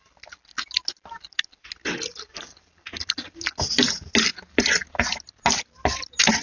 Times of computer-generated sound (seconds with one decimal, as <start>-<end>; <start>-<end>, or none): none